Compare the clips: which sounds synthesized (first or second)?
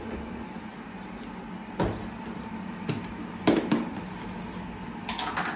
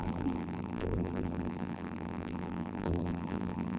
second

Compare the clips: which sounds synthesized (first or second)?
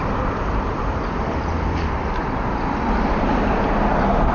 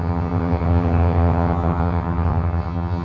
second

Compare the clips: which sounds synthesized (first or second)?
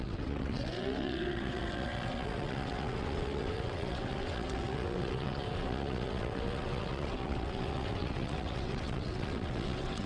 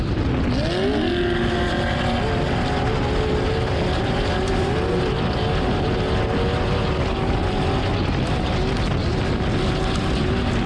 first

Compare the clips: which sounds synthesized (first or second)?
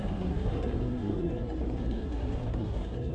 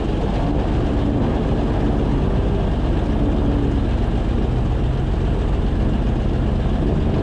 first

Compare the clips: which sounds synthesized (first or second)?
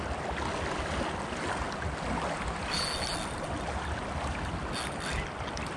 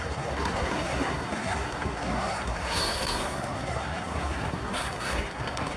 second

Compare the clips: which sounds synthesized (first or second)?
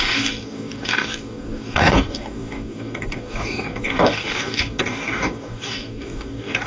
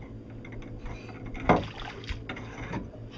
first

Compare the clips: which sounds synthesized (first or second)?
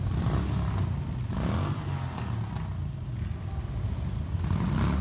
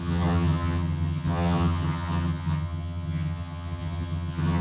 second